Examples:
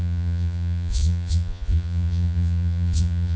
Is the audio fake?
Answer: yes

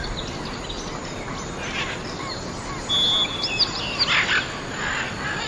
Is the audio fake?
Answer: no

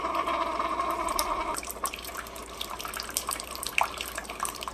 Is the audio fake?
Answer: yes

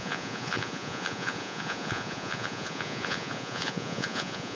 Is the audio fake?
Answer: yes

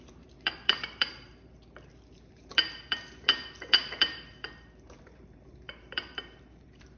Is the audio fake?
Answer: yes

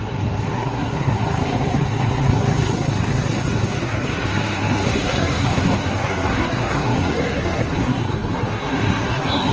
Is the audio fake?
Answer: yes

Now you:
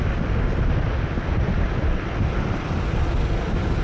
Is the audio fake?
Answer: no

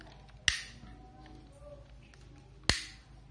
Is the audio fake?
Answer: no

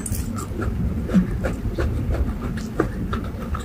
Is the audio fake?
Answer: no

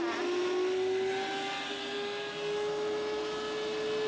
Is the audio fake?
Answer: no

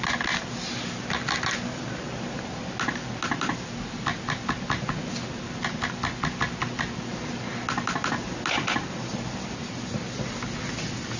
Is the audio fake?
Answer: no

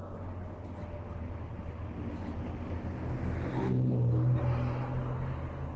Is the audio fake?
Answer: no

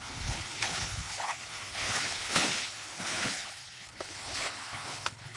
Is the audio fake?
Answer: yes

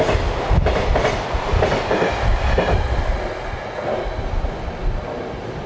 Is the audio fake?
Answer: no